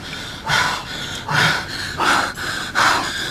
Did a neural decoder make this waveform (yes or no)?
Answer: no